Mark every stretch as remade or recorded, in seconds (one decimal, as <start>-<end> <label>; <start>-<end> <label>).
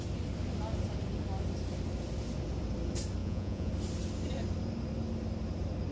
0.0-3.2 recorded; 3.2-3.7 remade; 3.7-5.9 recorded